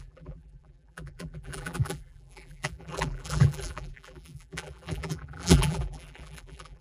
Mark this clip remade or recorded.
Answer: remade